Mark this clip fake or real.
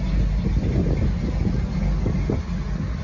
real